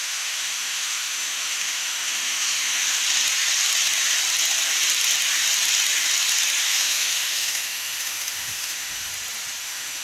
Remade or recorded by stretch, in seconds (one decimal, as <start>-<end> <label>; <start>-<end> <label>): 0.0-3.0 remade; 3.0-6.6 recorded; 6.6-9.1 remade; 9.1-9.6 recorded; 9.6-10.0 remade

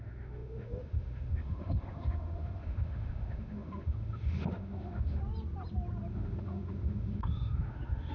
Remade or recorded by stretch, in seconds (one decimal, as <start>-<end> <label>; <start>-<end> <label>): 0.0-5.2 remade; 5.2-6.1 recorded; 6.1-8.1 remade

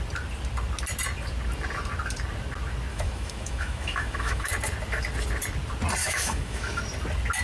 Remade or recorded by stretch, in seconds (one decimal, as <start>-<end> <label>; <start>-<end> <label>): 0.0-2.9 recorded; 2.9-4.5 remade; 4.5-6.0 recorded; 6.0-6.8 remade; 6.8-7.4 recorded

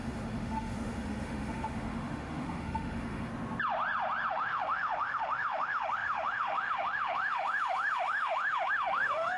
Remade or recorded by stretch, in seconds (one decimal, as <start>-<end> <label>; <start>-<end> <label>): 0.0-3.3 remade; 3.3-4.3 recorded; 4.3-9.4 remade

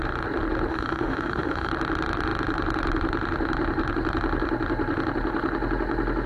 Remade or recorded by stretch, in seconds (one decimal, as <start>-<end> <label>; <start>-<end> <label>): 0.0-0.7 recorded; 0.7-1.7 remade; 1.7-6.3 recorded

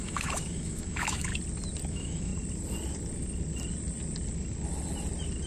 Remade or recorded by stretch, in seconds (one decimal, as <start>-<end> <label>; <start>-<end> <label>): 0.0-1.3 remade; 1.3-1.9 recorded; 1.9-2.3 remade; 2.3-5.5 recorded